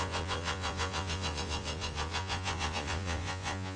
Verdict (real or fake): fake